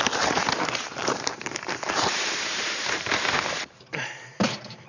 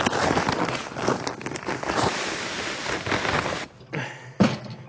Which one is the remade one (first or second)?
first